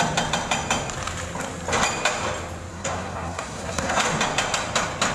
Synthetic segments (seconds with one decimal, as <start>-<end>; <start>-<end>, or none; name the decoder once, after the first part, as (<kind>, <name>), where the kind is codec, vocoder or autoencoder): 2.7-4.0 (codec, SNAC)